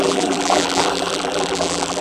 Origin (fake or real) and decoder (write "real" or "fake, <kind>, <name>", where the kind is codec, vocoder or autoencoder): fake, vocoder, BigVGAN v2